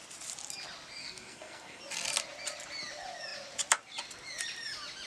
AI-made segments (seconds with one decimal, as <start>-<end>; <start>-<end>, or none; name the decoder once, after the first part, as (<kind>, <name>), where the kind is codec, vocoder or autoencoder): 1.0-1.8 (codec, SNAC)